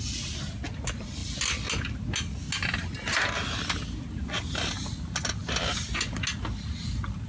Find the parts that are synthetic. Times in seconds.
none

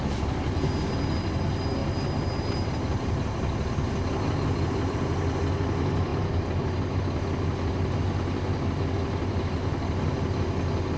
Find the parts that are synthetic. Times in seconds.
1.8-5.0 (vocoder, BigVGAN v2); 6.1-6.7

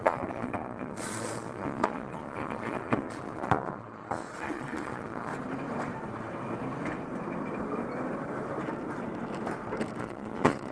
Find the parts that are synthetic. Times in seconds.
0.0-5.3 (vocoder, Vocos); 10.0-10.7

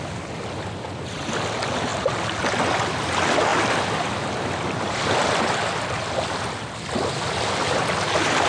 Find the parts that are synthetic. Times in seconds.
none

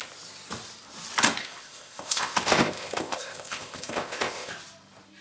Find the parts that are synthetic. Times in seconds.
1.4-4.5 (codec, ZipCodec)

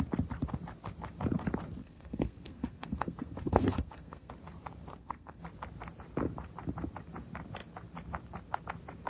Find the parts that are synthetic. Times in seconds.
1.8-4.3 (codec, SNAC); 4.9-5.4